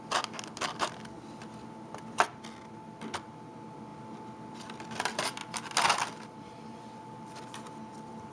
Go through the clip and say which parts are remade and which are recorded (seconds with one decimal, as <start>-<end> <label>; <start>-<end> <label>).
0.0-8.3 recorded